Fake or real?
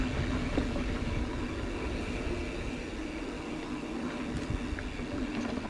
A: real